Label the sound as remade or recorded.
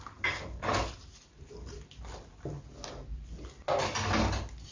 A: recorded